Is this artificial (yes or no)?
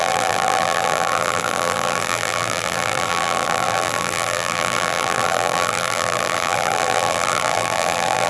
yes